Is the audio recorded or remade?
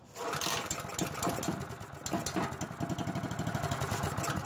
recorded